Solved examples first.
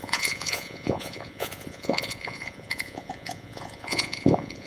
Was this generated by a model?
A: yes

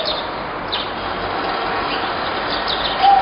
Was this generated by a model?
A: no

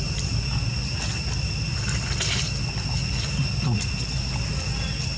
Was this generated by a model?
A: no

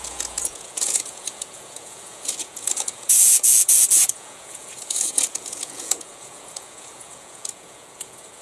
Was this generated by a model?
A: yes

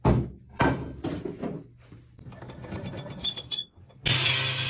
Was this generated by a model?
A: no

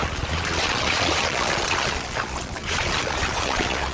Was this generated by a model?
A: yes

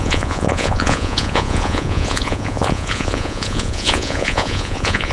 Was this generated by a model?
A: yes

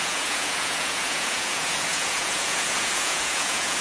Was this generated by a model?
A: yes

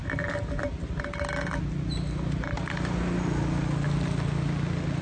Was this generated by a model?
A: no